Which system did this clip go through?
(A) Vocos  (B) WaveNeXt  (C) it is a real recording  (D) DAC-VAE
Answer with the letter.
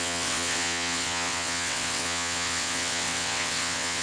B